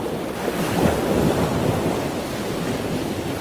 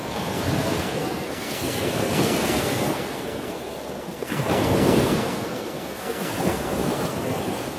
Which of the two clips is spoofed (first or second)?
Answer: second